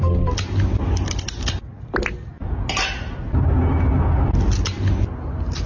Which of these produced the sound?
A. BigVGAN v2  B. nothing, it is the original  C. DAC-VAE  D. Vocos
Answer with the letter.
B